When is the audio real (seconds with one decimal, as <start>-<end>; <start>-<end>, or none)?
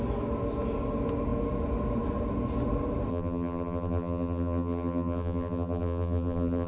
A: 0.0-3.1